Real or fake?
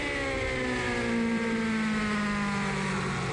real